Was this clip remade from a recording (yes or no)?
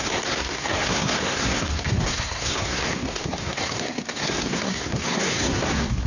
yes